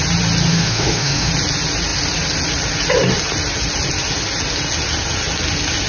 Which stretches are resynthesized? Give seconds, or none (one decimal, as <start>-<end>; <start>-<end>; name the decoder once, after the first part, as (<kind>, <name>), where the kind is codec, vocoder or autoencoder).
0.5-1.3 (autoencoder, DAC-VAE)